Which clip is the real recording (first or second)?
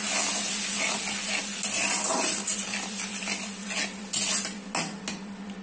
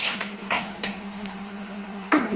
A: first